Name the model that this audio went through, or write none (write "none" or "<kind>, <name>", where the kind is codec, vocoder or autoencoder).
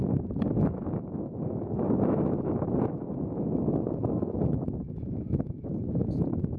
autoencoder, DAC-VAE